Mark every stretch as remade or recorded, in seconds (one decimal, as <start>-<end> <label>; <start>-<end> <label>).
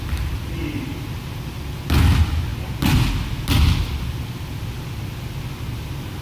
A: 0.0-6.2 recorded